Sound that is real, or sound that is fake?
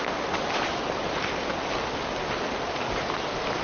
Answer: real